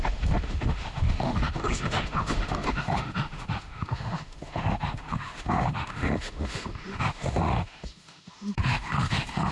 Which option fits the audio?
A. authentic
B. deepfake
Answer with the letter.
B